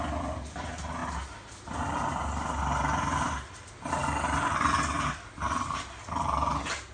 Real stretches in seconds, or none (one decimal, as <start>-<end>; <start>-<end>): 0.0-6.9